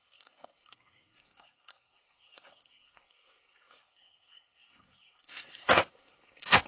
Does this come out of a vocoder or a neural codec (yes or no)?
yes